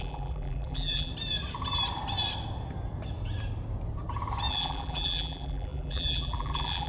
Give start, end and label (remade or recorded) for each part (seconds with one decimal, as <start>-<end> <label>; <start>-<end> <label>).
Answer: 0.0-1.1 remade; 1.1-4.5 recorded; 4.5-6.9 remade